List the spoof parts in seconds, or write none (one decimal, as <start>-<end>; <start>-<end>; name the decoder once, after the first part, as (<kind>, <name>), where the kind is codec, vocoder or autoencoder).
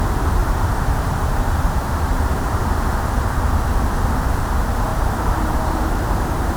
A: 0.4-2.6 (vocoder, BigVGAN v2); 4.9-6.6